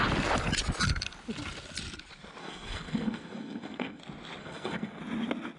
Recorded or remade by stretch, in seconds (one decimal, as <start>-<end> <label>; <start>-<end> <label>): 0.0-2.4 recorded; 2.4-4.0 remade; 4.0-4.4 recorded; 4.4-5.0 remade; 5.0-5.6 recorded